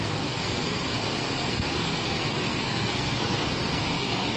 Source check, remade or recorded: remade